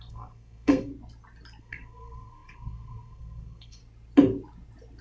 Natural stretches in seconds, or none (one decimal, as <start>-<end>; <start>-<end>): 0.9-1.6; 3.8-5.0